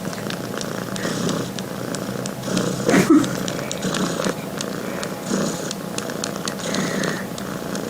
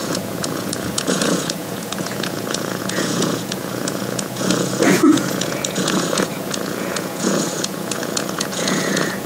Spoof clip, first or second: second